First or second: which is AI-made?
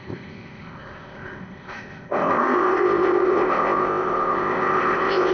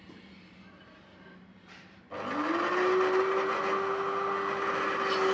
first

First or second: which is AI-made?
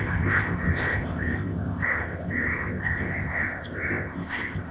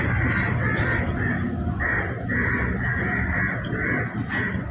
first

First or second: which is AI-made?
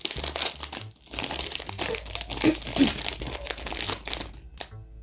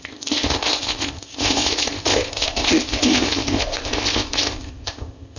second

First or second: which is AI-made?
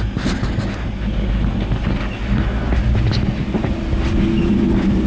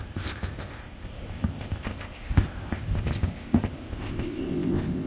second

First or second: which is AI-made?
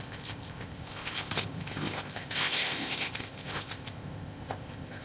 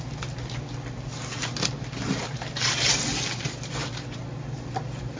first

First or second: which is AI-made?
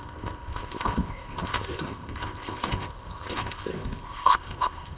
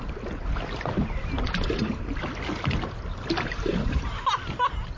first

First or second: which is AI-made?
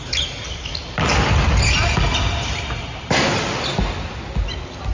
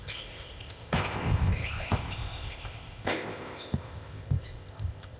second